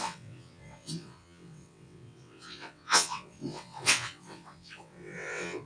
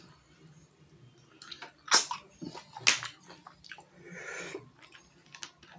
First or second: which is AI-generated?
first